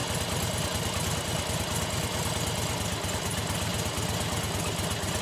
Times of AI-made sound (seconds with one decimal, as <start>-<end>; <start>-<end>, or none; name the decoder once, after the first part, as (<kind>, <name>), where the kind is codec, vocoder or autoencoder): none